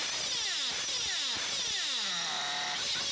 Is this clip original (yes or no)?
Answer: yes